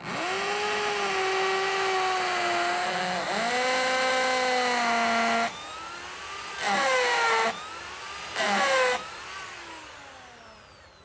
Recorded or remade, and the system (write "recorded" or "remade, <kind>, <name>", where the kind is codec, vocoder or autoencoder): recorded